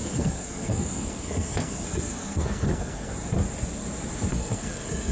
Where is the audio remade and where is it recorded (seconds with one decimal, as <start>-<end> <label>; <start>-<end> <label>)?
0.0-3.1 remade; 3.1-4.3 recorded; 4.3-5.1 remade